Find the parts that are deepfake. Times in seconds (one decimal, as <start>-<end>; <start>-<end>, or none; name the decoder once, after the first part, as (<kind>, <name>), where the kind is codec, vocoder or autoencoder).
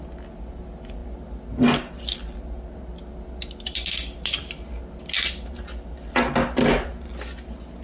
none